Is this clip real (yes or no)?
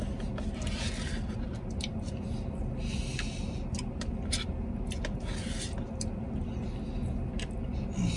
yes